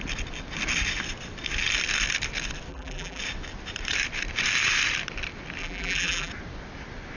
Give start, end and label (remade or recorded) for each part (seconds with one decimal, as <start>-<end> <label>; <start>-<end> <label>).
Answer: 0.0-2.7 recorded; 2.7-3.2 remade; 3.2-5.6 recorded; 5.6-6.3 remade; 6.3-7.2 recorded